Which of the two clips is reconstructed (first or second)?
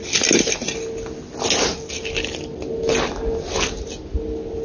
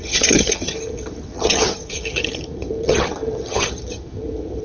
second